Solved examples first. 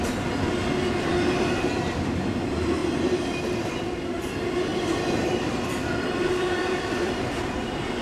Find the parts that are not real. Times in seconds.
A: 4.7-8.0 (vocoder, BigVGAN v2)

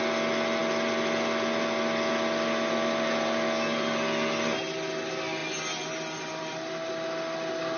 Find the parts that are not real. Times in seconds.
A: none

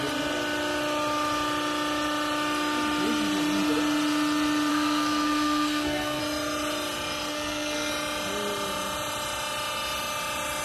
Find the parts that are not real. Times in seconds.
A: 4.7-6.2 (codec, SNAC); 7.3-7.9

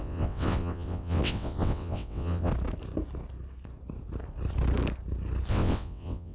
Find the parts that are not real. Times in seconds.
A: 0.0-2.5 (vocoder, WaveNeXt); 5.5-6.3

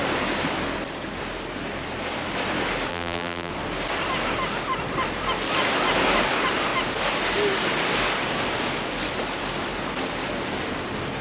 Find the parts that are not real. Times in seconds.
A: 2.9-3.5 (vocoder, BigVGAN v2)

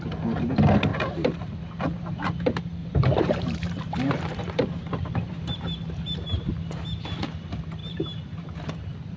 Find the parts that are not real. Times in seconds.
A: 0.9-1.5 (vocoder, BigVGAN v2); 2.8-6.5; 7.8-8.4

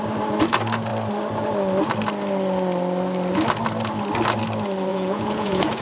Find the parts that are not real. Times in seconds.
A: 4.9-5.8 (vocoder, Vocos)

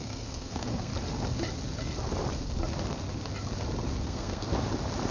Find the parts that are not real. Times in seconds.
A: 0.0-0.9 (codec, SNAC); 4.0-4.5